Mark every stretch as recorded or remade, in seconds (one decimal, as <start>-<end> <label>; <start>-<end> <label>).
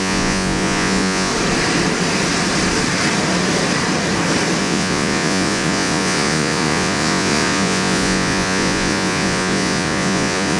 0.0-1.3 remade; 1.3-4.6 recorded; 4.6-10.6 remade